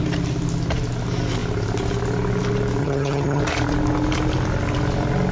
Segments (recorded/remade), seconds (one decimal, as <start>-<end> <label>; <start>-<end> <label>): 0.0-2.8 recorded; 2.8-3.4 remade; 3.4-5.3 recorded